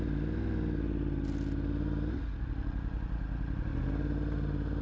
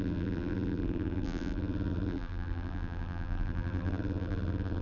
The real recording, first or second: first